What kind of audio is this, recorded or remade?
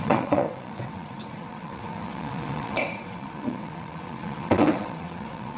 remade